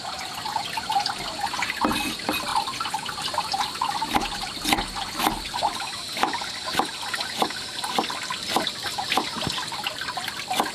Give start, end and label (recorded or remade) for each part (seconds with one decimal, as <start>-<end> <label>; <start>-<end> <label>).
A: 0.0-10.7 recorded